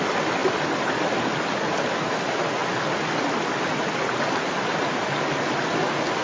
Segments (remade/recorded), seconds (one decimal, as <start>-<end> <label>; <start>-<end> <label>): 0.0-6.2 recorded